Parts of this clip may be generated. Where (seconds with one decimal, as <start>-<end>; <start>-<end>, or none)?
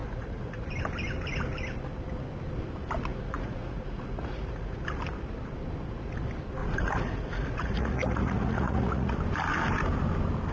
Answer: 0.0-0.7; 3.1-4.8; 6.6-9.2